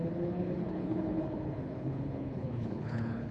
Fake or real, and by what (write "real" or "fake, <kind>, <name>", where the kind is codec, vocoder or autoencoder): fake, codec, HILCodec